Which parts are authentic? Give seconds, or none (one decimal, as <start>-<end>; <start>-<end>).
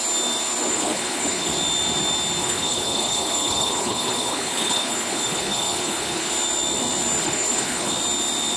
0.0-0.7; 1.5-2.4; 6.3-7.2; 7.9-8.6